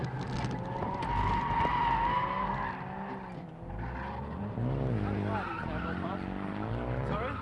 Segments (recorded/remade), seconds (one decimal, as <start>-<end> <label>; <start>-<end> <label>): 0.0-7.4 recorded